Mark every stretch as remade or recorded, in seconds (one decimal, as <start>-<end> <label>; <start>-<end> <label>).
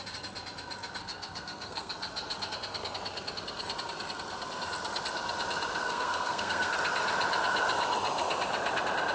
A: 0.0-1.0 recorded; 1.0-1.9 remade; 1.9-5.8 recorded; 5.8-6.7 remade; 6.7-9.1 recorded